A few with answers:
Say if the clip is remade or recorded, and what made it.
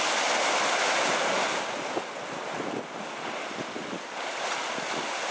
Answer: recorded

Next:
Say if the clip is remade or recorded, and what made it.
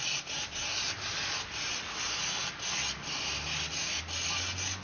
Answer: recorded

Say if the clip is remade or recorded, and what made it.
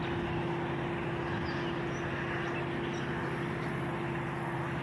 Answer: recorded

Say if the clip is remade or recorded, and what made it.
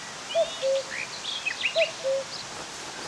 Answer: recorded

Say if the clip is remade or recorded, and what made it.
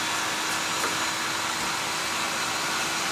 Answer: recorded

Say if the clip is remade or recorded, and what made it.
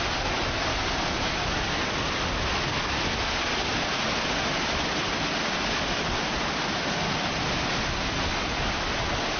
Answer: recorded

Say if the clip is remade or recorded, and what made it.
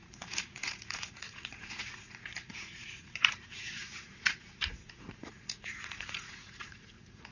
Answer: remade, vocoder, Vocos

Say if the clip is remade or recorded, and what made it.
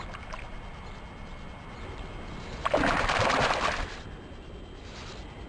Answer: recorded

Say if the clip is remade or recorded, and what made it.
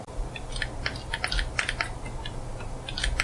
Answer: recorded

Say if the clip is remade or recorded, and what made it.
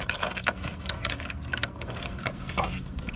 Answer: remade, codec, SNAC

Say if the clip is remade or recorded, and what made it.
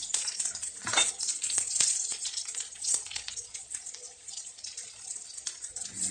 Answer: remade, vocoder, Vocos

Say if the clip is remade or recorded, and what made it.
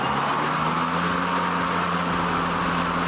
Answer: recorded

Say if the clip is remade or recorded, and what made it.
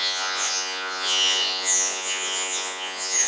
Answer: remade, vocoder, Vocos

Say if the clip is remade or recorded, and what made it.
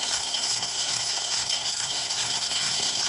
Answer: remade, codec, SNAC